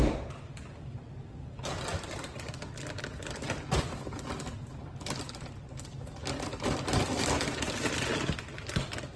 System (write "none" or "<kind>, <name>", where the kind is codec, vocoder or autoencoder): none